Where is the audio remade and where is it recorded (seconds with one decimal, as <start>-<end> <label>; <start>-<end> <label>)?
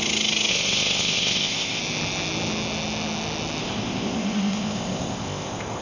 0.0-0.5 recorded; 0.5-1.8 remade; 1.8-3.6 recorded; 3.6-5.8 remade